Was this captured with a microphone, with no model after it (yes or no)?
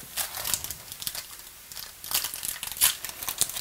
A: yes